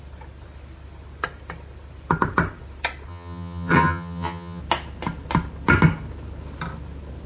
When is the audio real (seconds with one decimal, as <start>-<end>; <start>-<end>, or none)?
0.0-3.1; 4.6-7.3